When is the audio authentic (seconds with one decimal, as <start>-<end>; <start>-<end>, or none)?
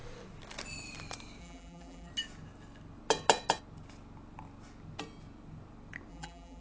0.0-1.4; 2.1-6.1